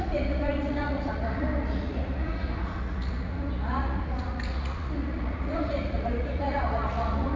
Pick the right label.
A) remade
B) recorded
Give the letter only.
A